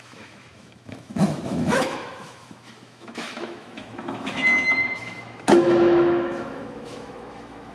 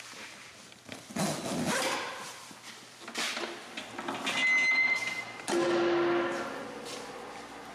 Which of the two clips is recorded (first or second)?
second